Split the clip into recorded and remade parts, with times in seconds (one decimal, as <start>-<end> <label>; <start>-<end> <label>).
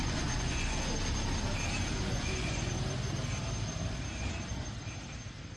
0.0-0.9 remade; 0.9-1.8 recorded; 1.8-2.7 remade; 2.7-5.6 recorded